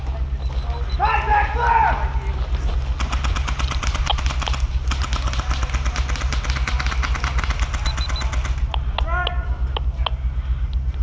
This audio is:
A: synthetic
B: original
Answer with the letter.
B